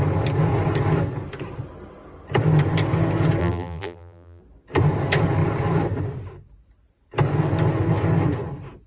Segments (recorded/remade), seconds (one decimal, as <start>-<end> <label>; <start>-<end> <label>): 0.0-3.4 recorded; 3.4-4.4 remade; 4.4-8.9 recorded